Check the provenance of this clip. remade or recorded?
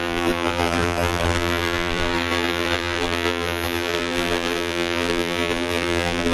remade